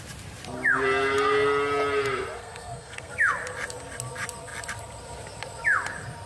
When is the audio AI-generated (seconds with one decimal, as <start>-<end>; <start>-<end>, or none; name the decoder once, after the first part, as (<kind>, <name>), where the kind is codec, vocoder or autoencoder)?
2.4-3.1 (codec, SNAC)